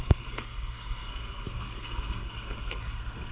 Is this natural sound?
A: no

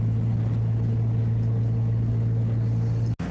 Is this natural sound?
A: yes